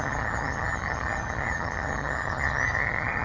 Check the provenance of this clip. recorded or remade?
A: remade